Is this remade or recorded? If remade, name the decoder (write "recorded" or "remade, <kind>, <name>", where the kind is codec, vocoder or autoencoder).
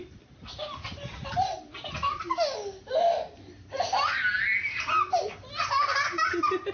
recorded